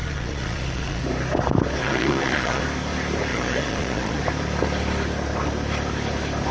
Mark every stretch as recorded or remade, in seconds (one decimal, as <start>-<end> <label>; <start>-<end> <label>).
0.0-1.0 remade; 1.0-1.8 recorded; 1.8-2.6 remade; 2.6-3.3 recorded; 3.3-4.2 remade; 4.2-6.5 recorded